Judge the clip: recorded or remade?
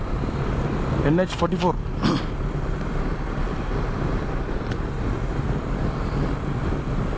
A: recorded